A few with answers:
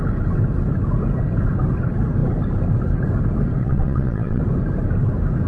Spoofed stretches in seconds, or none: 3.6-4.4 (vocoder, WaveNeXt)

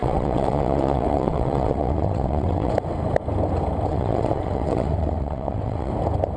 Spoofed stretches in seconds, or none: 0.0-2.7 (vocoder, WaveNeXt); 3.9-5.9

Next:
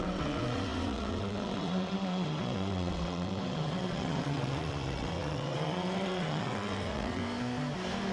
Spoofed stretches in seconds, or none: 0.0-7.2 (vocoder, WaveNeXt)